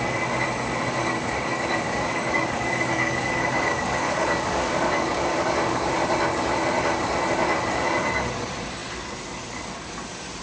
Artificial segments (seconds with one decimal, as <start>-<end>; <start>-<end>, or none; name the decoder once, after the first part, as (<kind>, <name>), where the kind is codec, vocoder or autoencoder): 1.0-5.9 (codec, DAC)